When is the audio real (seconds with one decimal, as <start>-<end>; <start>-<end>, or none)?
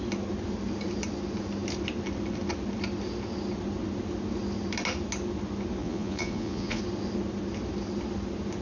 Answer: 0.0-5.8; 6.8-8.6